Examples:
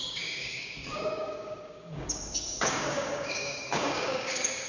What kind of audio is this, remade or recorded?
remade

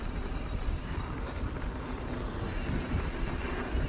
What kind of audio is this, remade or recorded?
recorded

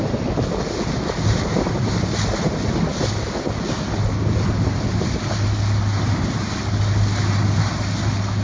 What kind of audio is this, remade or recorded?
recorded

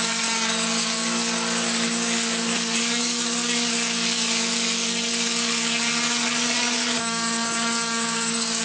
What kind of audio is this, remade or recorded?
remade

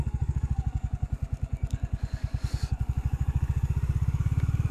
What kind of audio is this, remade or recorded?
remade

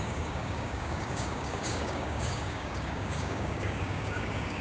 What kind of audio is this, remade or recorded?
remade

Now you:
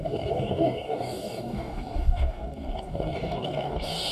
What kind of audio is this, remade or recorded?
remade